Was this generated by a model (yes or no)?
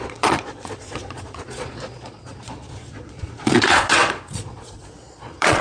yes